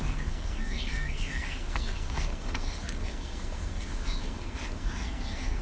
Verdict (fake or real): fake